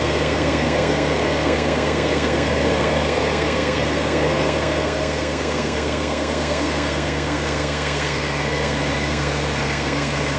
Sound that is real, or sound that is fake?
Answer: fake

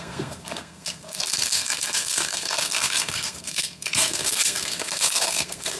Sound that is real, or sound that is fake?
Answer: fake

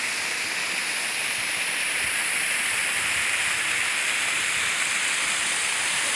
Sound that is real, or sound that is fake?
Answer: real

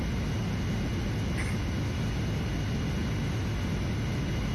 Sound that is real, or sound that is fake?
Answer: real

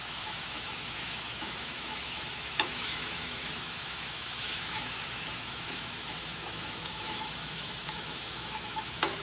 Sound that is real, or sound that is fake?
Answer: fake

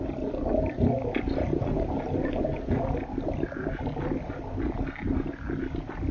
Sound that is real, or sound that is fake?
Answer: real